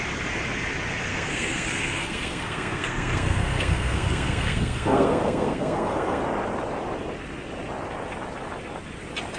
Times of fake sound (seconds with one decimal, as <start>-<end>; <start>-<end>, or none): 1.1-6.2